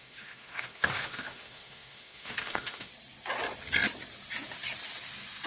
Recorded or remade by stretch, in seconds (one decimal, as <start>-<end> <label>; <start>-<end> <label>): 0.0-2.9 remade; 2.9-5.5 recorded